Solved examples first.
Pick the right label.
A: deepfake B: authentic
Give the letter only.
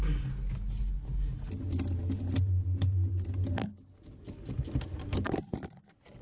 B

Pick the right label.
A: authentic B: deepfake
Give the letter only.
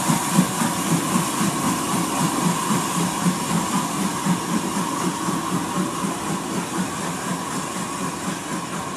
A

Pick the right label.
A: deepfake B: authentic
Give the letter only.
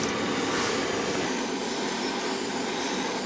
B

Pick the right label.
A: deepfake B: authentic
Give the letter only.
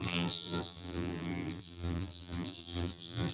A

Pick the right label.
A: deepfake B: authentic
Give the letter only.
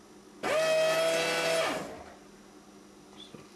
B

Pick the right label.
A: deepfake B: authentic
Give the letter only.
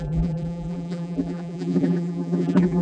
A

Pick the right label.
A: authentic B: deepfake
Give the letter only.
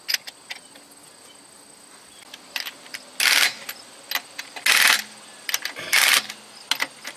A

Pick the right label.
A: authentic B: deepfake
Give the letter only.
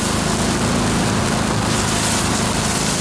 A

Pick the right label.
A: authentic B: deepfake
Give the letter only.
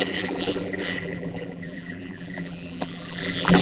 B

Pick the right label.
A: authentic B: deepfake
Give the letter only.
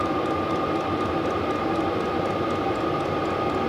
A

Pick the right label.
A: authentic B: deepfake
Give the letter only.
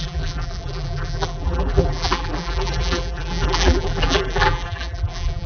B